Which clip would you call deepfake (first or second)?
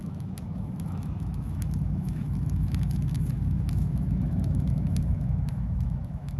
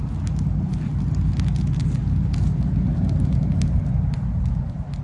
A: first